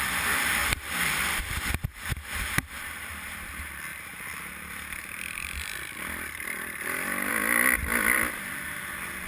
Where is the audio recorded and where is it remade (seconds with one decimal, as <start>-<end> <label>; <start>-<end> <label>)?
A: 0.0-0.6 recorded; 0.6-1.4 remade; 1.4-3.9 recorded; 3.9-7.3 remade; 7.3-9.3 recorded